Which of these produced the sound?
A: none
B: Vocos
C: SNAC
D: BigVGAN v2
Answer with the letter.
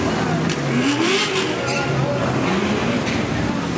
A